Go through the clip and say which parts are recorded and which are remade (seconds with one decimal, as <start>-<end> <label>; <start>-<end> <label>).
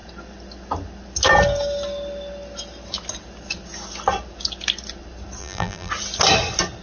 0.0-5.4 recorded; 5.4-5.9 remade; 5.9-6.8 recorded